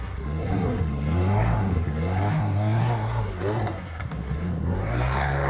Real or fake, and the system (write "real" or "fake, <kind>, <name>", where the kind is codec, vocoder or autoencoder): fake, codec, SNAC